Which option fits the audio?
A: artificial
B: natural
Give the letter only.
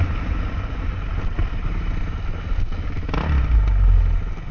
B